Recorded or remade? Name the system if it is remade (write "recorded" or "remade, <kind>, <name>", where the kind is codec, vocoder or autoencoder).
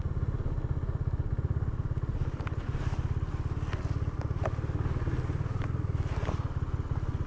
recorded